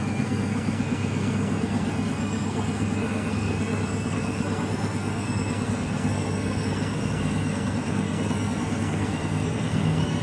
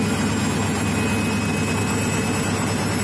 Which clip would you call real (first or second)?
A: second